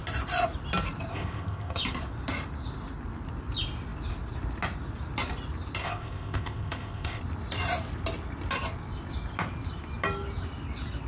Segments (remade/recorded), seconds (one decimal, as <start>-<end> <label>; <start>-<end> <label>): 0.0-1.1 recorded; 1.1-1.8 remade; 1.8-5.8 recorded; 5.8-7.2 remade; 7.2-11.1 recorded